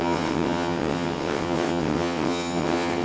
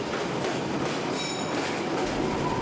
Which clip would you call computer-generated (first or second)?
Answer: first